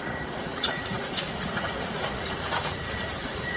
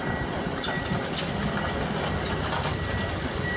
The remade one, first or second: first